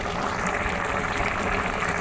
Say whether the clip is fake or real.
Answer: real